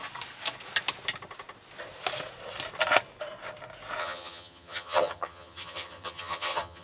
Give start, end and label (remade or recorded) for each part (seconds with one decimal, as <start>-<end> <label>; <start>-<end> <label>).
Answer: 0.0-4.0 recorded; 4.0-6.8 remade